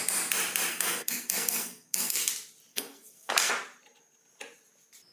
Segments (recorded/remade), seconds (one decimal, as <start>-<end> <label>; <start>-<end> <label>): 0.0-0.7 recorded; 0.7-2.3 remade; 2.3-2.7 recorded; 2.7-3.5 remade; 3.5-5.1 recorded